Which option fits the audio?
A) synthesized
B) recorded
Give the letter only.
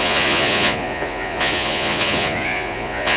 A